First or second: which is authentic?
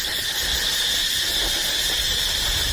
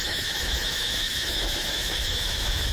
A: first